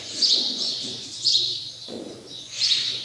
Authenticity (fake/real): fake